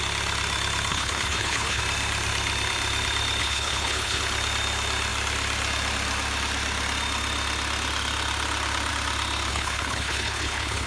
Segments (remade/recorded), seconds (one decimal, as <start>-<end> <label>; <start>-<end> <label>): 0.0-0.9 recorded; 0.9-1.8 remade; 1.8-3.4 recorded; 3.4-4.2 remade; 4.2-9.5 recorded; 9.5-10.9 remade